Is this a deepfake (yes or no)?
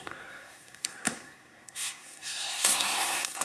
yes